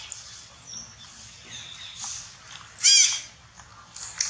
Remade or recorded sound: recorded